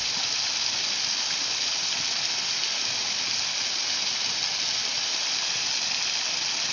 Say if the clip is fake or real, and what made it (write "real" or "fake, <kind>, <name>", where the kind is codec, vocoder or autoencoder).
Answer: real